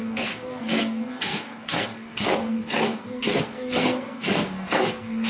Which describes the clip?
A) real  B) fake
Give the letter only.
B